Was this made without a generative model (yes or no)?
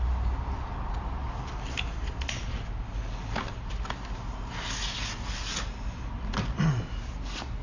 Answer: yes